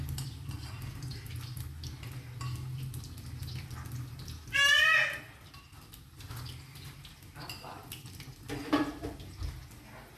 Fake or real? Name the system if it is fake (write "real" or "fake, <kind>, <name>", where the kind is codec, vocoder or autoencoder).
real